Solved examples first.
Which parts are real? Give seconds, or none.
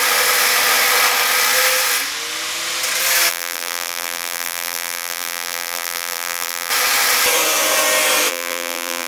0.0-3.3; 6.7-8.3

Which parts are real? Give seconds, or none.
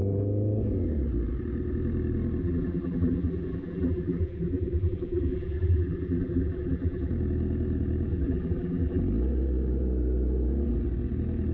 0.0-2.4; 7.1-8.1; 9.0-11.5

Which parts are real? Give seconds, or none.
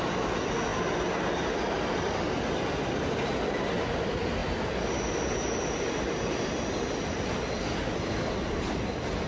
0.0-9.3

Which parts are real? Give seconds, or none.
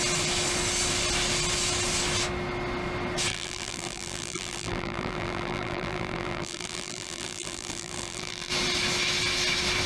0.0-3.3; 8.5-9.9